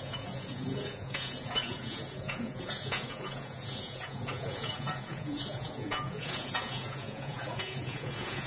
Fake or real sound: fake